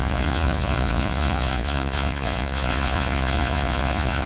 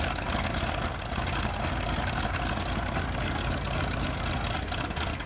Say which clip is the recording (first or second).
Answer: second